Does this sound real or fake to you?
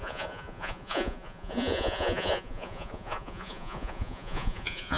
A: fake